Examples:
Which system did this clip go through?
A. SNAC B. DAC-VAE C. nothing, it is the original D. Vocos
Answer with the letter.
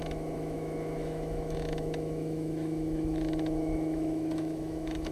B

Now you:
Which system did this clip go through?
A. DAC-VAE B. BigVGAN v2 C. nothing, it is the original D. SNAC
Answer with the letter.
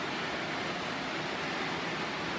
C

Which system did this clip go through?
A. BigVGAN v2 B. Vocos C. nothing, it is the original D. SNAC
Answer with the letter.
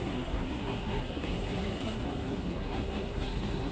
D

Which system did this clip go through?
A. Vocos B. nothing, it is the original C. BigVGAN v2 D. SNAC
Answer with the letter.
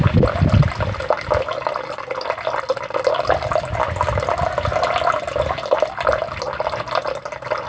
B